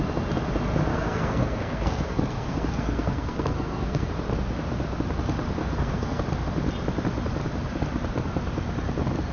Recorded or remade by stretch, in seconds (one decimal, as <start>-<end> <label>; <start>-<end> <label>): 0.0-0.9 recorded; 0.9-4.1 remade; 4.1-5.6 recorded; 5.6-6.2 remade; 6.2-9.3 recorded